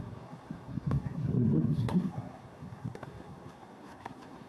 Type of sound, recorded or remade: remade